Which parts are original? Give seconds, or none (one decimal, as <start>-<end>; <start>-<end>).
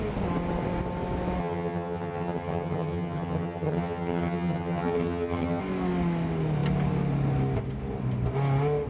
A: 0.0-1.4; 5.6-8.9